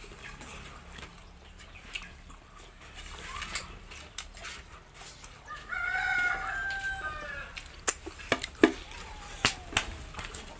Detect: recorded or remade recorded